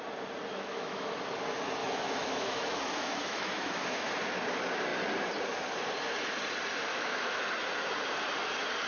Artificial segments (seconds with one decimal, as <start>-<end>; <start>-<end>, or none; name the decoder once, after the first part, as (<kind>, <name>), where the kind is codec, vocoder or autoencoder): 0.5-1.1 (autoencoder, DAC-VAE); 1.8-4.1; 6.9-7.4